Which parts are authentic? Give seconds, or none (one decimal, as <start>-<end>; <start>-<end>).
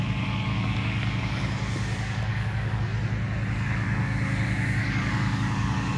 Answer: 2.9-3.5